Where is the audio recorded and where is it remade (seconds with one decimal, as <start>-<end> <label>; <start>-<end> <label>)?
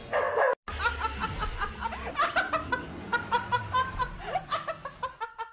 0.0-3.1 recorded; 3.1-4.2 remade; 4.2-5.5 recorded